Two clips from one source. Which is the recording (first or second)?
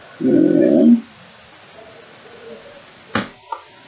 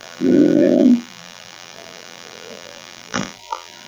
first